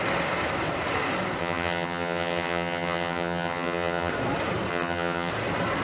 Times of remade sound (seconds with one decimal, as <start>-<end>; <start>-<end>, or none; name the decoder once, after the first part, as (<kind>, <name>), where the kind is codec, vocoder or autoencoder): 1.4-4.1 (vocoder, HiFi-GAN); 4.7-5.3